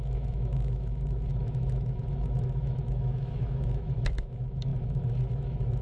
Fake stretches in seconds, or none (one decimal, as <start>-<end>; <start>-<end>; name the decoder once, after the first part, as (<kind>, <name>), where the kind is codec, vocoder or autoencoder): 0.0-5.8 (autoencoder, DAC-VAE)